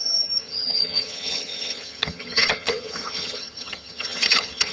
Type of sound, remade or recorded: remade